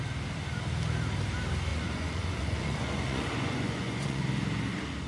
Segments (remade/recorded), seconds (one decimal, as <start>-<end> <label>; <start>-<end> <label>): 0.0-1.7 recorded; 1.7-4.2 remade; 4.2-5.1 recorded